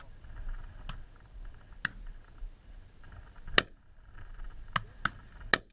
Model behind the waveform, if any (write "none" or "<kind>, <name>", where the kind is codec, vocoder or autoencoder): none